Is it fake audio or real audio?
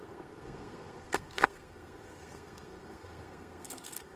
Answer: fake